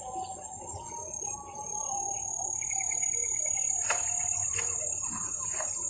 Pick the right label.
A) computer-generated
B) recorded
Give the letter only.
A